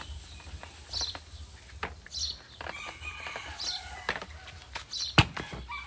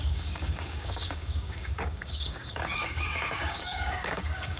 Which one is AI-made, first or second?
second